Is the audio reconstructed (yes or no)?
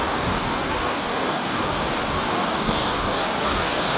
yes